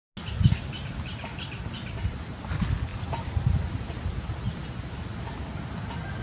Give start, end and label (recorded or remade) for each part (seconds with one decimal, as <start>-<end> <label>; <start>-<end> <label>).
0.0-6.2 recorded